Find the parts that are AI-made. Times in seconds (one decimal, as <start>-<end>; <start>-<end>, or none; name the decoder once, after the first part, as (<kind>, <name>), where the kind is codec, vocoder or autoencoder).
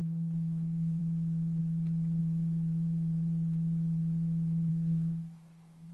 0.0-1.0 (codec, DAC); 4.7-5.9